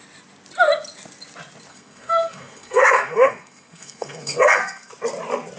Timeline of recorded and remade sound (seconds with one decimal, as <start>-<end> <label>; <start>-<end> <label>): 0.0-1.7 recorded; 1.7-4.9 remade; 4.9-5.6 recorded